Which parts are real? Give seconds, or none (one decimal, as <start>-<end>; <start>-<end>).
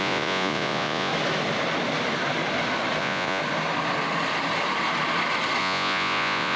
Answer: 1.1-3.0; 3.4-5.6